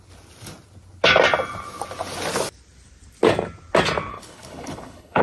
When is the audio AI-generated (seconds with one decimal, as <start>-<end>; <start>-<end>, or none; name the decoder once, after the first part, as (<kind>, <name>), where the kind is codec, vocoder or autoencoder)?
4.1-5.2 (codec, HILCodec)